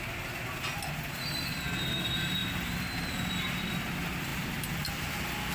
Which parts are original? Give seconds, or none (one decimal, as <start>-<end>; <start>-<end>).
0.0-5.5